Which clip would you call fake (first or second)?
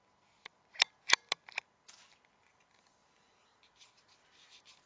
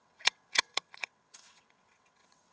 second